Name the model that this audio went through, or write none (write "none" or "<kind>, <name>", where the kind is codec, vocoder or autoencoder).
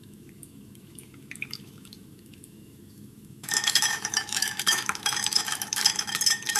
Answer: autoencoder, DAC-VAE